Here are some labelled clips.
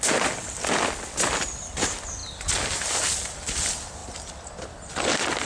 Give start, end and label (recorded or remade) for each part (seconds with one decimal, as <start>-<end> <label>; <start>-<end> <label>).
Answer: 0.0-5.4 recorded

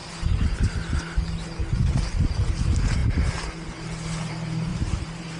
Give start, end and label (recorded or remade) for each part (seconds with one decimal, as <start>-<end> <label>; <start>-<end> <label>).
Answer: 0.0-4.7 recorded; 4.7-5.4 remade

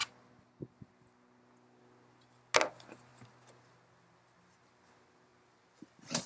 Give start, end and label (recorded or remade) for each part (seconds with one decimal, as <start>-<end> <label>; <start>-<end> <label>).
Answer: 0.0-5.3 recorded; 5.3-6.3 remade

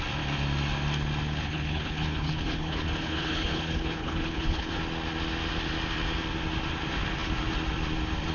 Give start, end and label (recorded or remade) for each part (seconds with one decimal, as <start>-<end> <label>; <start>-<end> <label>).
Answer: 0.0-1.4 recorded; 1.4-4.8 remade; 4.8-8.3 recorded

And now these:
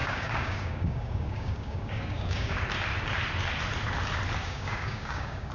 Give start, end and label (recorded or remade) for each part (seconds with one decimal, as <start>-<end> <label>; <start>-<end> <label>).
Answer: 0.0-2.6 remade; 2.6-4.4 recorded; 4.4-5.5 remade

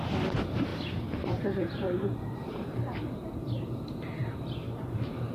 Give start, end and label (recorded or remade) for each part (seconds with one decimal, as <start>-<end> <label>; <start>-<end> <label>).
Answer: 0.0-0.7 recorded; 0.7-3.8 remade; 3.8-4.2 recorded; 4.2-5.3 remade

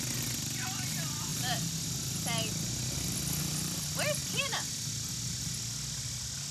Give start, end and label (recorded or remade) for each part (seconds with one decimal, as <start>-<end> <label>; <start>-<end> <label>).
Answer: 0.0-6.5 recorded

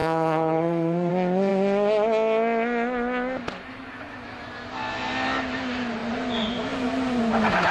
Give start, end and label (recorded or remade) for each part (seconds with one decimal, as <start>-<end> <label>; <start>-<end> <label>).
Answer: 0.0-1.1 remade; 1.1-7.7 recorded